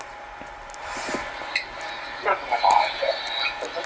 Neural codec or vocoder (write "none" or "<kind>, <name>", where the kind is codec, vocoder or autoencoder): none